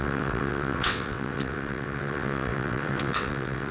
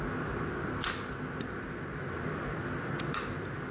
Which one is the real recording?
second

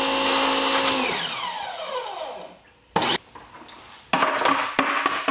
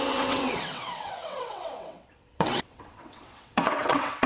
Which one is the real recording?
first